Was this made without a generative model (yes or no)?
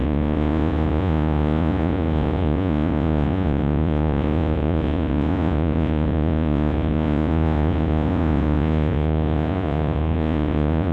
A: no